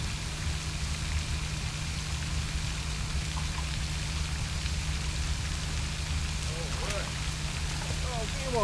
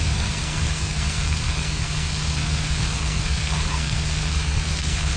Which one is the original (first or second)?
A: first